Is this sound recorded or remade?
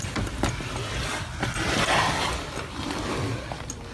recorded